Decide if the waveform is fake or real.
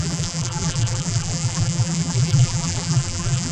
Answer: fake